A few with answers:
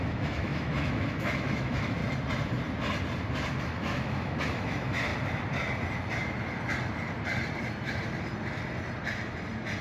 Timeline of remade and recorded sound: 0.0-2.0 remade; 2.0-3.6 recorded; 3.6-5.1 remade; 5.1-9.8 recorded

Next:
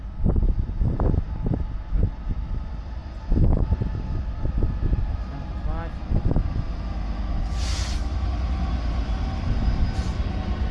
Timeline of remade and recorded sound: 0.0-10.7 recorded

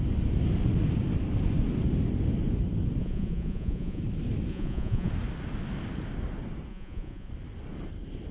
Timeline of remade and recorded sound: 0.0-3.0 recorded; 3.0-4.0 remade; 4.0-4.5 recorded; 4.5-5.1 remade; 5.1-6.7 recorded; 6.7-7.3 remade; 7.3-8.3 recorded

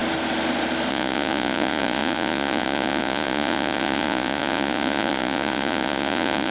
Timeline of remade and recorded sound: 0.0-0.9 recorded; 0.9-6.5 remade

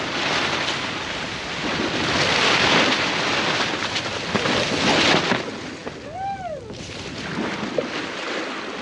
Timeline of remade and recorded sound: 0.0-8.8 recorded